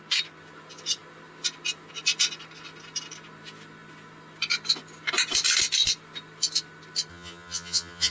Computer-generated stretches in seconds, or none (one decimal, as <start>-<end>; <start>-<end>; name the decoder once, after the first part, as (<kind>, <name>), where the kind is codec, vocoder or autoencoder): 7.1-8.1 (vocoder, HiFi-GAN)